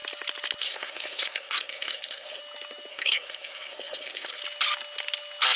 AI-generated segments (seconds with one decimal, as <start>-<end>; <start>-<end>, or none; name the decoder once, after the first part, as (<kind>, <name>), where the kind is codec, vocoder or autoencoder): 0.6-2.4 (codec, SNAC); 2.9-4.4